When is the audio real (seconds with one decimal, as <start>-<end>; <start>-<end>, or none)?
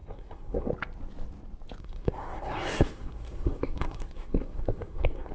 0.7-1.8